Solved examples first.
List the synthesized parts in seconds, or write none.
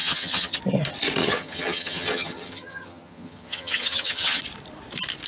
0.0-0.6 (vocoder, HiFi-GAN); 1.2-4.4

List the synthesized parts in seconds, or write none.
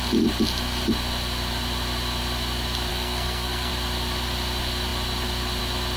2.9-3.7 (codec, SNAC)